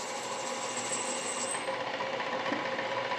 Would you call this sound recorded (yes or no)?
yes